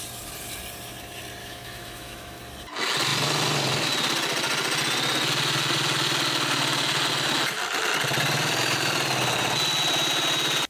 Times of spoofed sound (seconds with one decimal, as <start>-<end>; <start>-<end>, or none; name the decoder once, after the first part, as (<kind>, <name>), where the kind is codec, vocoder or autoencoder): 1.4-2.4 (autoencoder, DAC-VAE)